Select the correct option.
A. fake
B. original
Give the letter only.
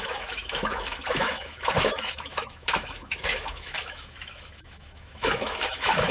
A